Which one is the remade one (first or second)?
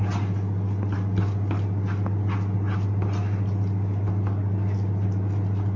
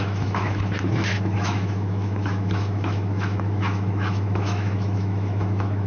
second